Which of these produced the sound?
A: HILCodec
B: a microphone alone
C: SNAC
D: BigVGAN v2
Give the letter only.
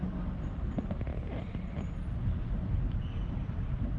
B